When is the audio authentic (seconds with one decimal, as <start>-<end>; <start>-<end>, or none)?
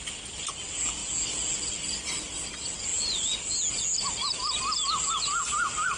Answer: 0.0-6.0